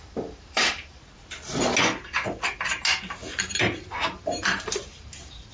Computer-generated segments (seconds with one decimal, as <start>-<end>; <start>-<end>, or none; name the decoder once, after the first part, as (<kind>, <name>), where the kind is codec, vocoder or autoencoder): 0.0-1.0 (vocoder, BigVGAN v2); 3.2-5.5

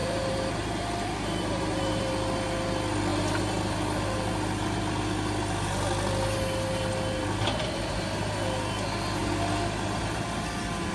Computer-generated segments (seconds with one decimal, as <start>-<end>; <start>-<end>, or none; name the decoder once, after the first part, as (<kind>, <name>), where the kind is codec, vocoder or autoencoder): 0.0-2.1 (vocoder, BigVGAN v2)

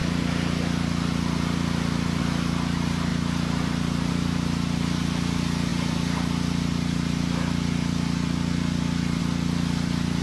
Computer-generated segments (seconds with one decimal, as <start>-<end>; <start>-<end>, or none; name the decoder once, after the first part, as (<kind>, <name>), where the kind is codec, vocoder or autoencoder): 2.2-10.2 (vocoder, BigVGAN v2)

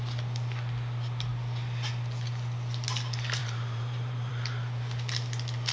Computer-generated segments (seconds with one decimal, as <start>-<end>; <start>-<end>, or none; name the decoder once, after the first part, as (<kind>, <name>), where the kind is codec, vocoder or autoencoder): 3.4-4.3 (vocoder, BigVGAN v2)

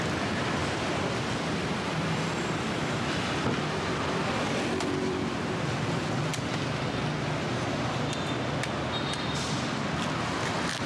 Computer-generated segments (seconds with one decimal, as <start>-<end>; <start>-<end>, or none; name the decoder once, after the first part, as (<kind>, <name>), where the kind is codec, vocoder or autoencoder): 0.0-6.3 (vocoder, BigVGAN v2)

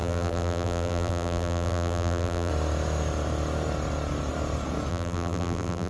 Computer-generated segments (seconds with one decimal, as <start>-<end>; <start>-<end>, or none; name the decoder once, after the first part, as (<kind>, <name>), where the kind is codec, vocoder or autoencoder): 0.0-2.5 (vocoder, BigVGAN v2); 4.9-5.9

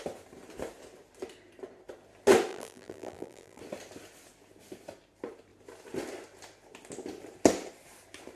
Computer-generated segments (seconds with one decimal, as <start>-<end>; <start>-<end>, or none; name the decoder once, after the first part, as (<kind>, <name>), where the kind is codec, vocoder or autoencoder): 2.5-3.6 (vocoder, BigVGAN v2)

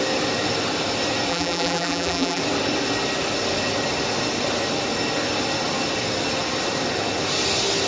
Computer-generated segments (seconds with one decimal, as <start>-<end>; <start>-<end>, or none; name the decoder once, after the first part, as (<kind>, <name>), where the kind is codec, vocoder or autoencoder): 1.3-2.4 (vocoder, BigVGAN v2)